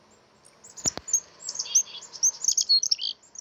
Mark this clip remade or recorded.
recorded